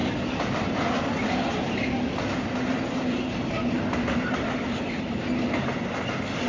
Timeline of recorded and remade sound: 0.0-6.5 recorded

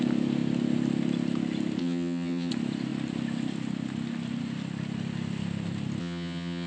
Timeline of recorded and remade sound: 0.0-1.8 recorded; 1.8-2.5 remade; 2.5-6.0 recorded; 6.0-6.7 remade

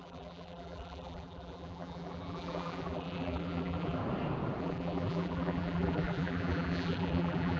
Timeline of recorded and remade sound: 0.0-4.0 remade; 4.0-4.6 recorded; 4.6-7.6 remade

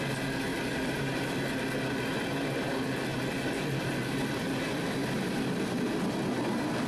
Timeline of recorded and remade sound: 0.0-3.1 recorded; 3.1-4.3 remade; 4.3-6.9 recorded

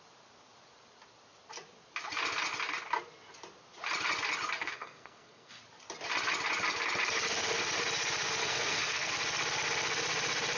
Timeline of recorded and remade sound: 0.0-4.6 recorded; 4.6-5.6 remade; 5.6-8.4 recorded; 8.4-9.1 remade; 9.1-10.6 recorded

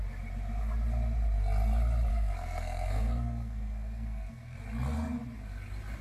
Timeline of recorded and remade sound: 0.0-2.1 recorded; 2.1-4.6 remade; 4.6-6.0 recorded

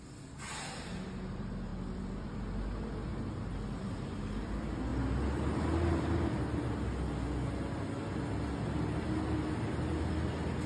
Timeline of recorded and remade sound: 0.0-10.7 recorded